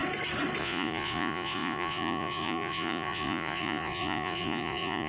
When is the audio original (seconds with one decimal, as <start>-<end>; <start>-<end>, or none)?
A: 0.0-0.6